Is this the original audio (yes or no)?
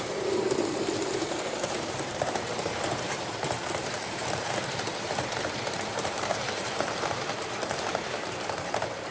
no